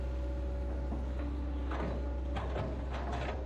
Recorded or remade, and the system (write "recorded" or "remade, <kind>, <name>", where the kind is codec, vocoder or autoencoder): recorded